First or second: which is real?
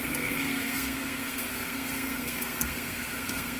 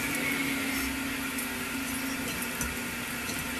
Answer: second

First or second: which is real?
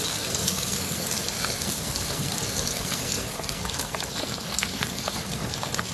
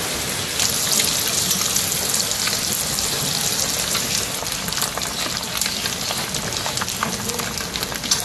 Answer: second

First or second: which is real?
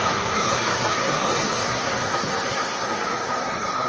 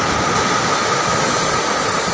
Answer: second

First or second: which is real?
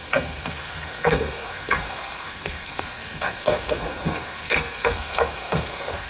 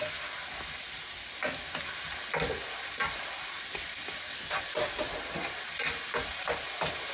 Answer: second